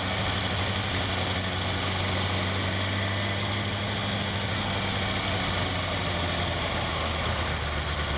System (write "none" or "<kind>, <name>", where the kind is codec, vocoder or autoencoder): none